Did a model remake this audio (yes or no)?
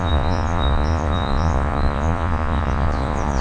yes